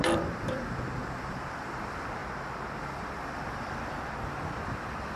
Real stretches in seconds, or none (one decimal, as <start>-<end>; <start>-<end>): 2.2-2.8